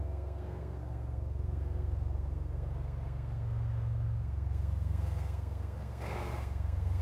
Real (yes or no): no